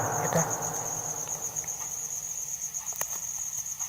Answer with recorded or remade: recorded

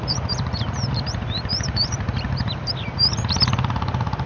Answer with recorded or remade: remade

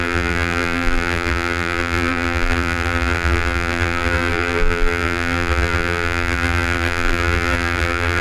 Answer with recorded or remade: remade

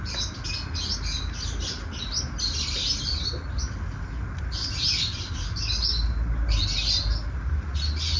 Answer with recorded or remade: recorded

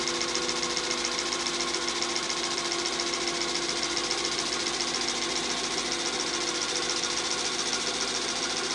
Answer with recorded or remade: recorded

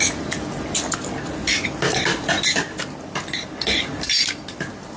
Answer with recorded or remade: recorded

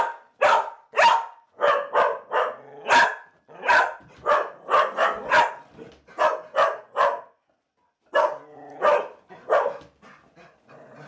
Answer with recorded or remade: recorded